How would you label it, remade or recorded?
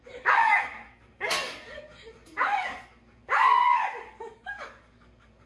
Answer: remade